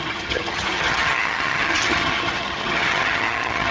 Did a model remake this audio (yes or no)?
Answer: yes